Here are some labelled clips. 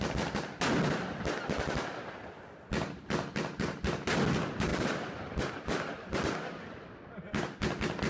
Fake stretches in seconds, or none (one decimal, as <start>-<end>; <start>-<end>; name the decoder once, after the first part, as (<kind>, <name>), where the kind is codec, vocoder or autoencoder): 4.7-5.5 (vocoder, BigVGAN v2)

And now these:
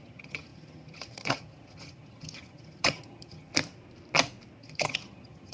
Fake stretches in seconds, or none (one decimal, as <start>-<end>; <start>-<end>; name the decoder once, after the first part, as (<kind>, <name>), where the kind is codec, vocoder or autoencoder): 0.0-3.5 (vocoder, HiFi-GAN); 4.6-5.5

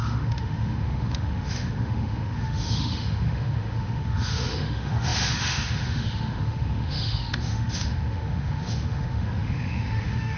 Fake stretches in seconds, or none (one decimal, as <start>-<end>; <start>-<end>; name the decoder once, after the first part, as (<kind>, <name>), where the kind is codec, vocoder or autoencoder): 0.0-10.4 (autoencoder, DAC-VAE)

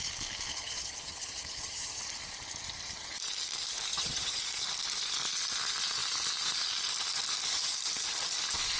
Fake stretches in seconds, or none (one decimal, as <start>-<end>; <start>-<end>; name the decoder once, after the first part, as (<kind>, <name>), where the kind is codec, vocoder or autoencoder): 0.5-2.0 (vocoder, HiFi-GAN); 3.9-4.4